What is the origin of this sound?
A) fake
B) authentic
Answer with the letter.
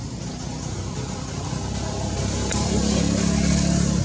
B